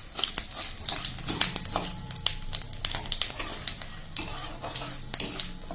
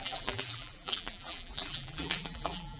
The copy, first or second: second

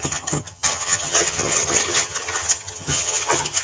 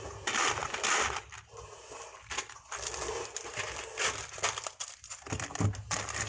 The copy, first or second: first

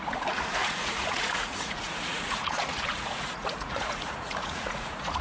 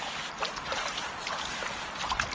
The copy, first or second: first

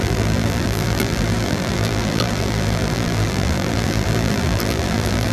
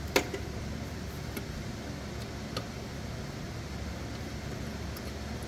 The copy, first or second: first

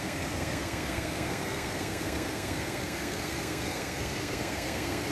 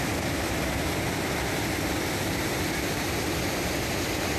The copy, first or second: first